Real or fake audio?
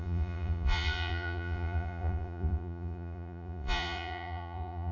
fake